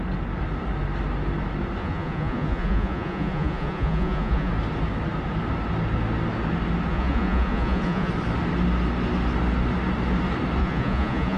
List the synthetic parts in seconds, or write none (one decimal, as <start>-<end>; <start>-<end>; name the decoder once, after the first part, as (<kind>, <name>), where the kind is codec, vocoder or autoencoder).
1.8-4.5 (vocoder, Vocos); 6.9-8.1; 10.6-11.4